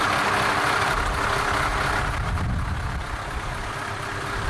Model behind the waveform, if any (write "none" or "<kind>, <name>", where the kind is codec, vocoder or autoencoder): none